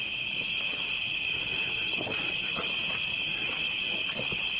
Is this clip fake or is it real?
real